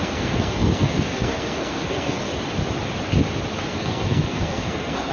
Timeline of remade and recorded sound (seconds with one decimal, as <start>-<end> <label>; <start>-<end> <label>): 0.0-2.3 remade; 2.3-3.7 recorded; 3.7-5.1 remade